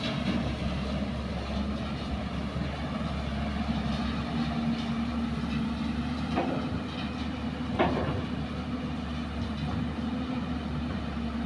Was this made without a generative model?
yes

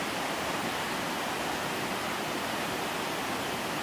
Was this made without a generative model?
no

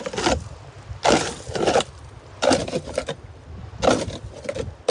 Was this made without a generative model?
yes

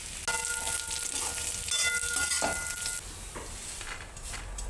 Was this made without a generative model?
yes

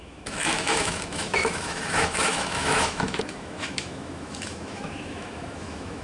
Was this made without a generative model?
no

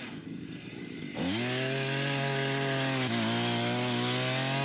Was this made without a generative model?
yes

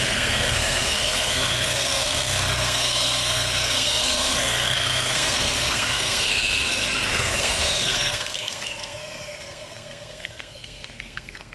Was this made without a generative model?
no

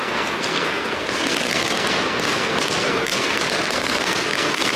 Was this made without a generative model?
no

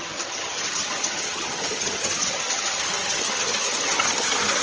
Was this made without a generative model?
no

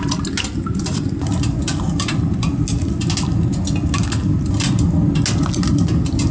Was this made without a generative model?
yes